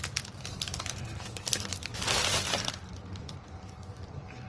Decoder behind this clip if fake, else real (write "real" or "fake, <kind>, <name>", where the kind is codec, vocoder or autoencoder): fake, vocoder, BigVGAN v2